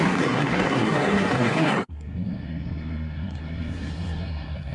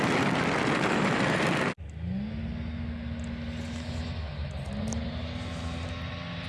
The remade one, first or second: first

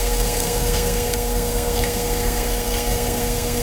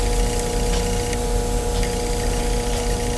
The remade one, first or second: first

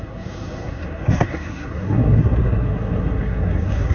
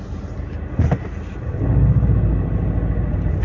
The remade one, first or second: first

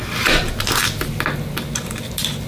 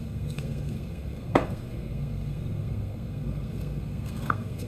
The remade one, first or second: second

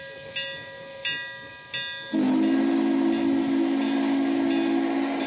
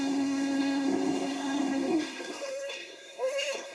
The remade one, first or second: second